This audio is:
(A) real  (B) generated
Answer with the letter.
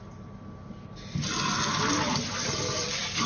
A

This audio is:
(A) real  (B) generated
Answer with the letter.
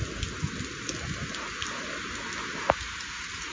A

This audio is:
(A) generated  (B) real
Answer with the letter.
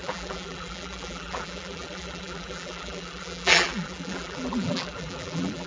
A